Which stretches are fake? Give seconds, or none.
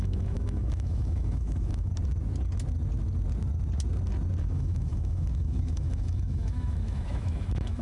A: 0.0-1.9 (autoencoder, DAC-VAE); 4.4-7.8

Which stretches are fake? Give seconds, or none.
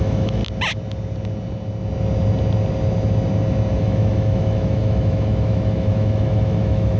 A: 0.0-0.4 (autoencoder, DAC-VAE); 3.8-7.0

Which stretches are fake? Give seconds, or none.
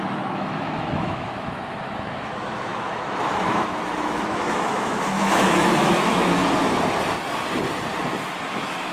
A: 0.0-6.4 (autoencoder, DAC-VAE); 8.5-8.9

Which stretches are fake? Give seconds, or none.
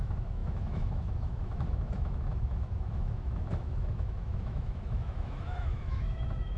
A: 0.0-6.6 (autoencoder, DAC-VAE)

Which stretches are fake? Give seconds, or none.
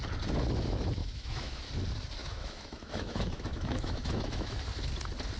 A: 1.0-1.6 (autoencoder, DAC-VAE); 2.2-4.6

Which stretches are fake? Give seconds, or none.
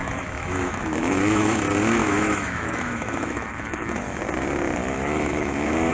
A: 0.0-1.6 (autoencoder, DAC-VAE); 2.0-4.2; 4.8-5.9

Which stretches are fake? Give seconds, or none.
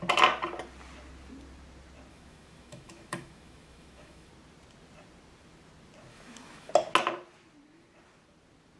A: 2.1-4.3 (autoencoder, DAC-VAE); 6.1-6.7